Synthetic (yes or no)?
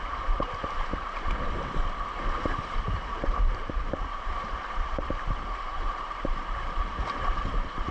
yes